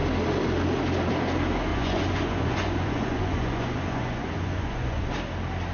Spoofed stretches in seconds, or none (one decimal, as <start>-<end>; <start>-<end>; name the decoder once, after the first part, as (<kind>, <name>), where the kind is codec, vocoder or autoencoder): 1.7-5.1 (vocoder, Vocos)